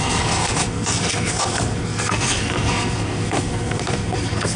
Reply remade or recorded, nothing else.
remade